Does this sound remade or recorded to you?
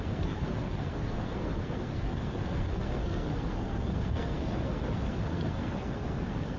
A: remade